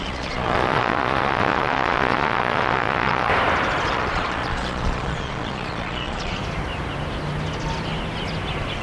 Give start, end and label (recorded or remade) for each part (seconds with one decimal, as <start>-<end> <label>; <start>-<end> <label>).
0.0-3.3 remade; 3.3-3.9 recorded; 3.9-6.4 remade; 6.4-8.8 recorded